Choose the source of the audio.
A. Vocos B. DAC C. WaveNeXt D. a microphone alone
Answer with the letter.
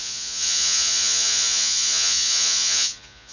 A